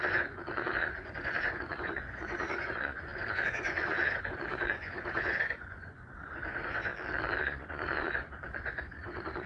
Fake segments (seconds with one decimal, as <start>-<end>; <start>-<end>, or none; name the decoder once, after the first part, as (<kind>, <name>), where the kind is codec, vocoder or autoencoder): 0.0-6.9 (vocoder, Vocos); 7.4-9.5

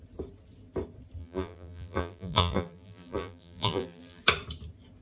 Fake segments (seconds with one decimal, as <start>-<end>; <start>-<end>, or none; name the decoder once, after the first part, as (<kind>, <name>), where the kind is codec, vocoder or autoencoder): 1.2-4.2 (vocoder, BigVGAN v2)

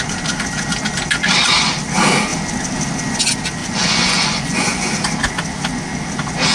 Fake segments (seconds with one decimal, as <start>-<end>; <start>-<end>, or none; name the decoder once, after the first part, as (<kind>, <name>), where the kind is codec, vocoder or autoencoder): 3.6-4.9 (vocoder, Vocos)